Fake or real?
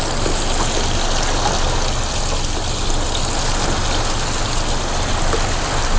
real